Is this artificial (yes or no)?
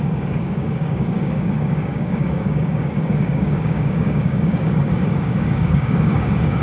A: yes